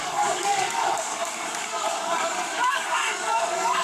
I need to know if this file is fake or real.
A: fake